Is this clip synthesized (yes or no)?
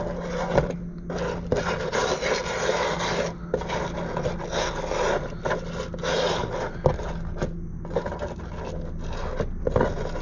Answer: no